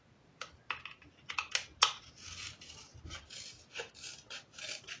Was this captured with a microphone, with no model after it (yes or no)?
yes